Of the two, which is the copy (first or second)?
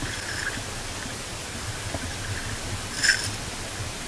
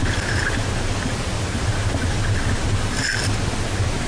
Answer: first